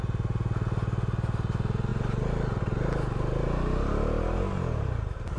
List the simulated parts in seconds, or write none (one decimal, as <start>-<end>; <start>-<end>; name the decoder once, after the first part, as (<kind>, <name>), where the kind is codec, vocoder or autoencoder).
none